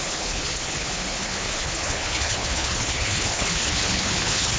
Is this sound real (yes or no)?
no